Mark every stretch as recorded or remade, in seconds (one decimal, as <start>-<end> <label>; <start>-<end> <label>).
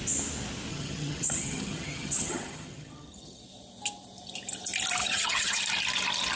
0.0-0.7 recorded; 0.7-3.4 remade; 3.4-5.0 recorded; 5.0-5.6 remade; 5.6-6.4 recorded